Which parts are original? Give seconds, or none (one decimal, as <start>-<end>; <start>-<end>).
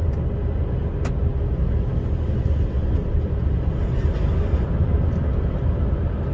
0.0-6.3